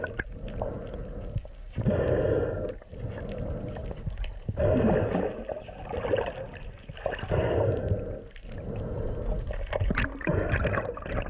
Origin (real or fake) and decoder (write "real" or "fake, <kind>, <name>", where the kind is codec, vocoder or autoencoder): real